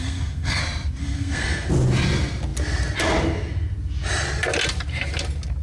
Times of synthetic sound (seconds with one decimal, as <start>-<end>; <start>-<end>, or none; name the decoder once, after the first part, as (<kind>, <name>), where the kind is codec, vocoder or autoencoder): 0.0-0.6 (codec, SNAC); 1.0-1.7